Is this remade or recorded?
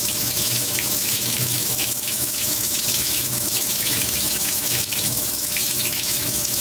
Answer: remade